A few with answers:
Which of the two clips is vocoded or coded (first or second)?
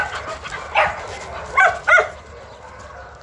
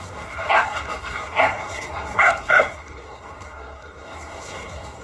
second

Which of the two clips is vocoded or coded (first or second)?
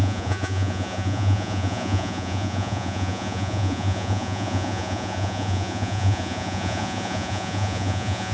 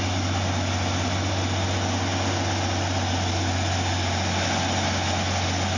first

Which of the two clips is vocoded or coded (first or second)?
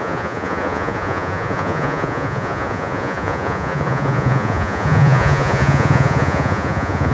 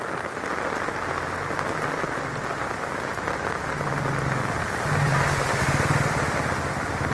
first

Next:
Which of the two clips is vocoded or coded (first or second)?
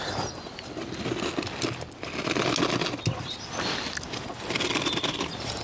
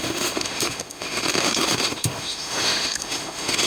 second